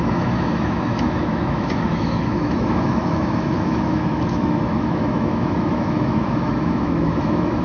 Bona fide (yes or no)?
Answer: no